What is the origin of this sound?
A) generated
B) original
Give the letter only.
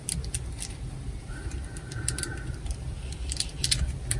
B